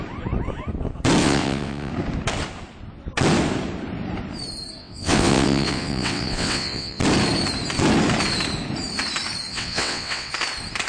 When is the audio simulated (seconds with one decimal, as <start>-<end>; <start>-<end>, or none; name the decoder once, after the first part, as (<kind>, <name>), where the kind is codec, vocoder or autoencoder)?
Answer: 1.2-1.9 (vocoder, WaveNeXt); 4.8-7.0; 9.5-10.3